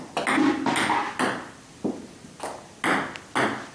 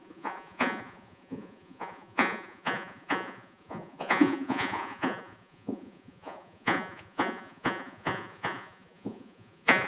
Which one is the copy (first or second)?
second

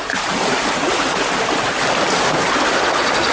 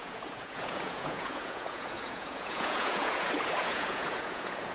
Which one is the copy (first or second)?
second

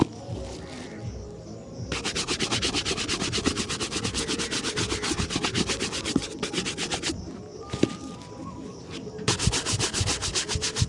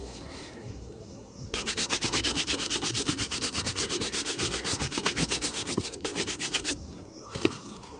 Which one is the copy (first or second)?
second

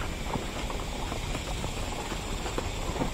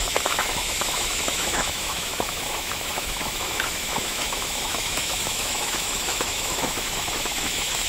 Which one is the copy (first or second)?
second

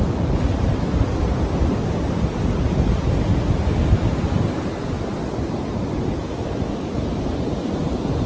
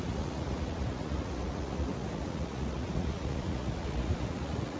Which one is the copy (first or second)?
second